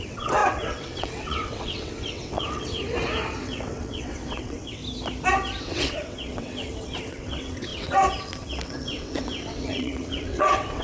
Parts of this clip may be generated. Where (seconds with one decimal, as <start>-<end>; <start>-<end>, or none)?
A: 0.0-2.8; 3.4-4.8; 5.6-10.8